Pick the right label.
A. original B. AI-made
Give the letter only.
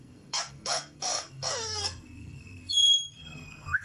B